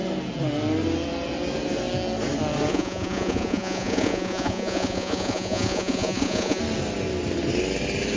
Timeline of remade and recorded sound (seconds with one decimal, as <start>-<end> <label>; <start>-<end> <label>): 0.0-2.7 recorded; 2.7-6.6 remade; 6.6-8.2 recorded